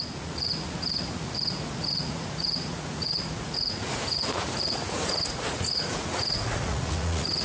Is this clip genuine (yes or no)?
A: no